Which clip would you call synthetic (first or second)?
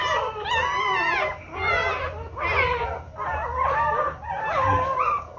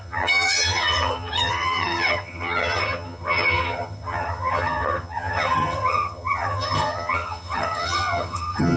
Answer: second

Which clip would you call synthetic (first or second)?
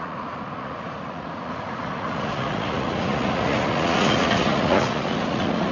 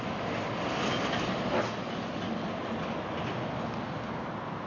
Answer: first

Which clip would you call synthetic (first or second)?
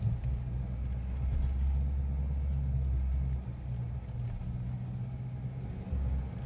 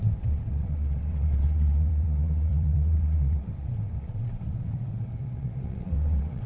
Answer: second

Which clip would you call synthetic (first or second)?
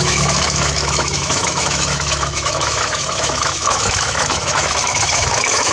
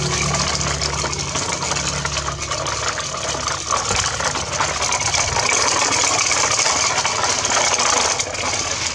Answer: first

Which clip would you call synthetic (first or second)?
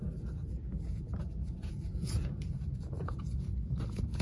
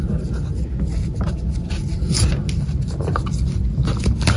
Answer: first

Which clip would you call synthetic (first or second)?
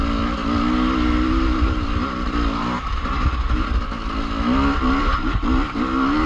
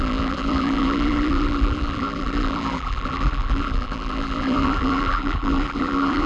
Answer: second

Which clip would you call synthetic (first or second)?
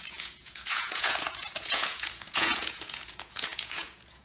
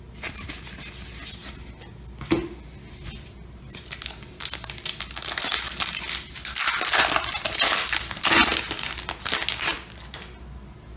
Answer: first